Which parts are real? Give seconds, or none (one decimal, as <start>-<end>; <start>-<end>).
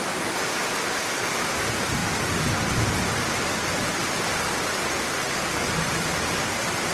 0.0-6.9